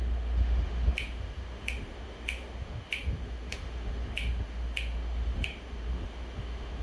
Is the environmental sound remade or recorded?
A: remade